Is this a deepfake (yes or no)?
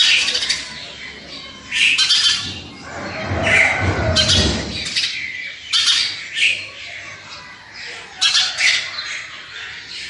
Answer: no